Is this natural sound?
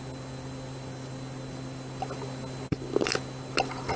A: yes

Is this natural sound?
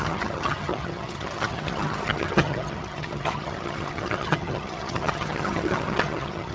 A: no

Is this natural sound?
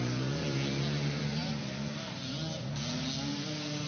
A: yes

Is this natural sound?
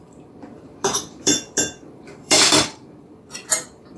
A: no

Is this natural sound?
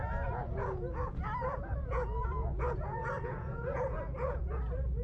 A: no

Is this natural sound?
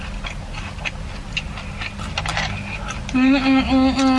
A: yes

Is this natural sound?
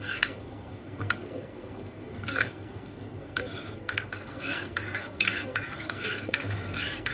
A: no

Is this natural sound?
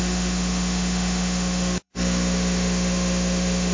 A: no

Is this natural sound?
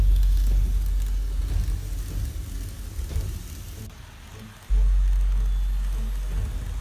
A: yes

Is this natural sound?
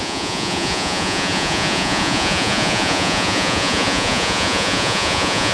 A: no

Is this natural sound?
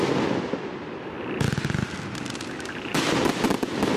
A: yes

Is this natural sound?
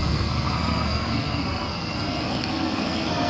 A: no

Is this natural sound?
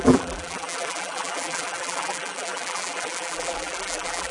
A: no